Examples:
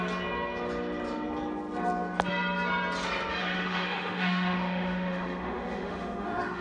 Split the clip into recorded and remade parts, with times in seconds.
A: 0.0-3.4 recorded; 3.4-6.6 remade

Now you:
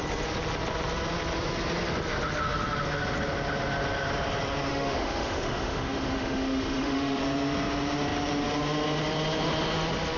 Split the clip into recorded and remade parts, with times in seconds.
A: 0.0-4.7 recorded; 4.7-7.2 remade; 7.2-10.2 recorded

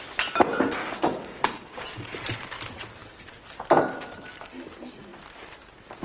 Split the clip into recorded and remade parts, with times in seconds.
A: 0.0-0.8 recorded; 0.8-2.1 remade; 2.1-6.0 recorded

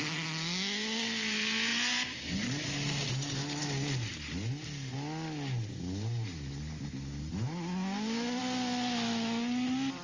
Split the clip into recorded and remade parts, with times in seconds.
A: 0.0-10.0 recorded

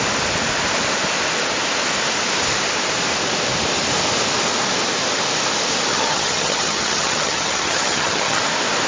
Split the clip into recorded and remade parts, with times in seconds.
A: 0.0-5.9 recorded; 5.9-8.4 remade; 8.4-8.9 recorded